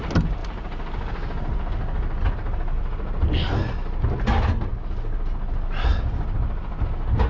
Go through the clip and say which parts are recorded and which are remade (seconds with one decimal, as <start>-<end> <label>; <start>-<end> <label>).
0.0-7.3 recorded